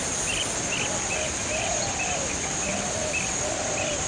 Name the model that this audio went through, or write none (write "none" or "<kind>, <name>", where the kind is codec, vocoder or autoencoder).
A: none